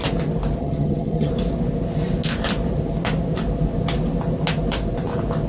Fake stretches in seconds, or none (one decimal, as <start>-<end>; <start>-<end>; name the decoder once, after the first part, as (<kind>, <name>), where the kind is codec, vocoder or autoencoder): 0.6-1.3 (vocoder, HiFi-GAN)